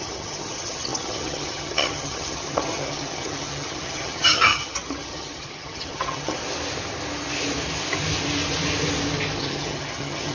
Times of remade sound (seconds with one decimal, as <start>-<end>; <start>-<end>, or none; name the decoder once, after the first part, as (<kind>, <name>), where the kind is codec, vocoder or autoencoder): 0.0-6.4 (vocoder, HiFi-GAN); 9.4-10.3

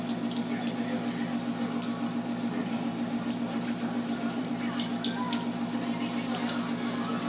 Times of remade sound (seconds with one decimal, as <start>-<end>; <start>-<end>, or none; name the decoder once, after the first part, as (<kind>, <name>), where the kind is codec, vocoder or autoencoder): 2.6-4.5 (vocoder, BigVGAN v2)

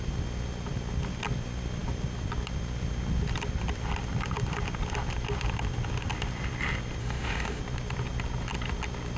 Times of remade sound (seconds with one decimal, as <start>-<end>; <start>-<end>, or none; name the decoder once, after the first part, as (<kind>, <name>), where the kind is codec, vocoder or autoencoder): 7.0-7.6 (autoencoder, DAC-VAE)

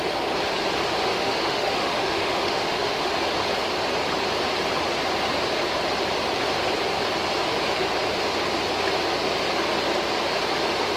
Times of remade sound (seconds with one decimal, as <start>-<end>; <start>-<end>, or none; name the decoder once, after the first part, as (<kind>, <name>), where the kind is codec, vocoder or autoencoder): 1.1-3.1 (autoencoder, DAC-VAE)

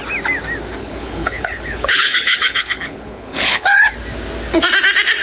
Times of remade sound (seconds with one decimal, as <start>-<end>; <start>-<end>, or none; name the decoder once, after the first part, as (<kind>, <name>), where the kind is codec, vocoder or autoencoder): 0.8-3.9 (codec, HILCodec)

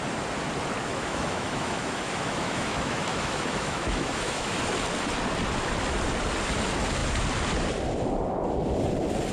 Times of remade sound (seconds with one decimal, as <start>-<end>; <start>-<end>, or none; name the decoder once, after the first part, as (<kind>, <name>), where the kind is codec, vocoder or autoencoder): 0.9-4.6 (autoencoder, DAC-VAE)

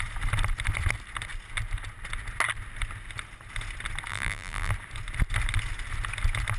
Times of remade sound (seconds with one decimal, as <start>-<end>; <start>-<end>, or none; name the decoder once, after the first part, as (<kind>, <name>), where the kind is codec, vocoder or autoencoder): 4.1-4.7 (vocoder, BigVGAN v2)